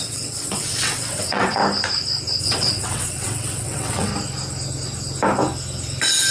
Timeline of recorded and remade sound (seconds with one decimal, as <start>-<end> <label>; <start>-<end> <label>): 0.0-1.6 remade; 1.6-2.4 recorded; 2.4-4.1 remade; 4.1-6.3 recorded